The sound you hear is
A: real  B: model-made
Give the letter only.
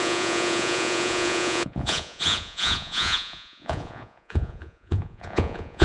B